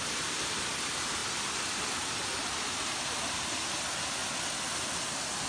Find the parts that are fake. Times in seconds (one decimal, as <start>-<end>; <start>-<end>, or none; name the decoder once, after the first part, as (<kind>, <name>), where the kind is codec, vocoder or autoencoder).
none